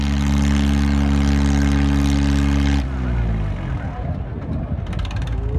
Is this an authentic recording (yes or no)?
yes